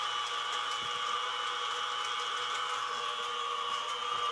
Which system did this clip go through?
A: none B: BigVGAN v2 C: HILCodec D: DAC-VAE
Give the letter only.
A